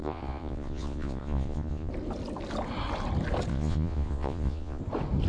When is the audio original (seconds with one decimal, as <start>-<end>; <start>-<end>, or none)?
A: 1.9-3.5; 4.8-5.3